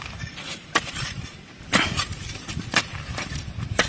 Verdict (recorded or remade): remade